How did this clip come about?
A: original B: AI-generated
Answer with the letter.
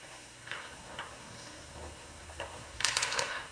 B